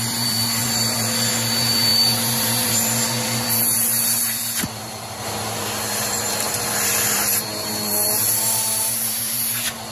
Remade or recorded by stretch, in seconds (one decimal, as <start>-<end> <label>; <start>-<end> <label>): 0.0-9.9 remade